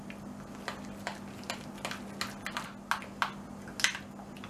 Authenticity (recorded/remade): recorded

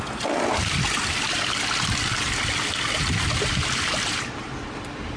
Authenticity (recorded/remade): recorded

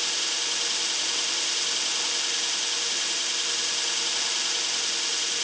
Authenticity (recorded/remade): recorded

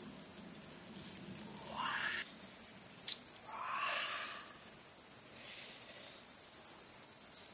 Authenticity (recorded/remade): recorded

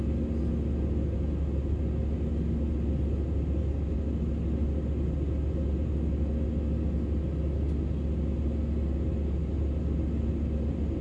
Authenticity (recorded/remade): recorded